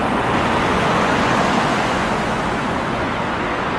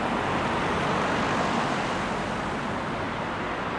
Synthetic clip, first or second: first